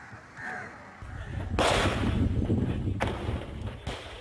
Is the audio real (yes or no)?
yes